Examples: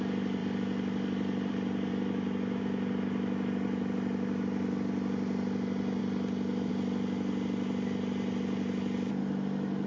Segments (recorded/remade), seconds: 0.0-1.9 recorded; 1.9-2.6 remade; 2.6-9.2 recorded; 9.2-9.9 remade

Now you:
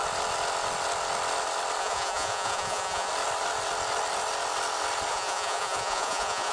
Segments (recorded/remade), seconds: 0.0-1.8 recorded; 1.8-3.1 remade; 3.1-5.1 recorded; 5.1-6.5 remade

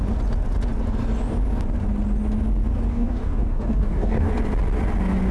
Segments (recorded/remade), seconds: 0.0-2.9 recorded; 2.9-4.3 remade; 4.3-5.3 recorded

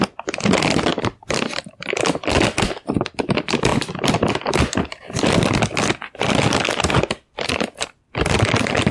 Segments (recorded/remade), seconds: 0.0-0.9 remade; 0.9-3.1 recorded; 3.1-8.9 remade

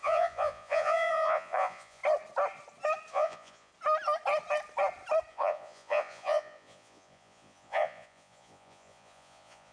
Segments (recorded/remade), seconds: 0.0-2.0 remade; 2.0-3.1 recorded; 3.1-3.7 remade; 3.7-5.3 recorded; 5.3-9.7 remade

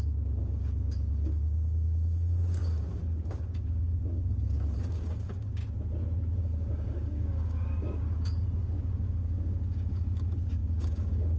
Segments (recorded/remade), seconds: 0.0-5.6 remade; 5.6-6.4 recorded; 6.4-11.4 remade